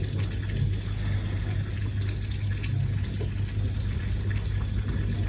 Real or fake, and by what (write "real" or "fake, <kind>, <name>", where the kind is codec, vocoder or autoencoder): real